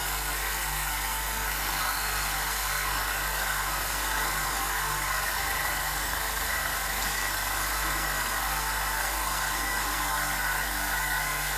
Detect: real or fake fake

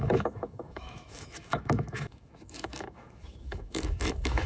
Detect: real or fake fake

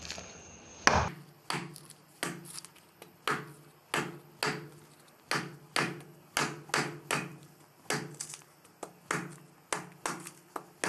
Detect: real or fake real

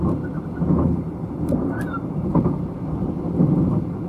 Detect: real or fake real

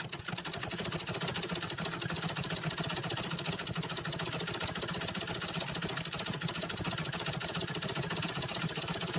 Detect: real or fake real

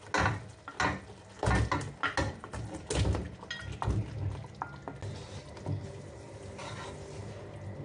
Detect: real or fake real